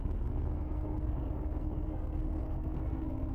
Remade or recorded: remade